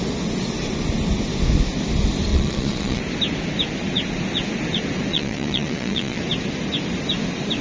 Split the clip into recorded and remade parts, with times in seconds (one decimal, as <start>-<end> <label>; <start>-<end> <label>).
0.0-2.3 recorded; 2.3-3.0 remade; 3.0-5.1 recorded; 5.1-6.2 remade; 6.2-7.6 recorded